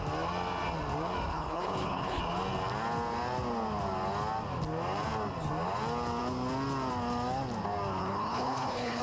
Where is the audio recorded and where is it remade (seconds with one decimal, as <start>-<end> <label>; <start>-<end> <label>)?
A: 0.0-1.3 recorded; 1.3-2.2 remade; 2.2-8.0 recorded; 8.0-9.0 remade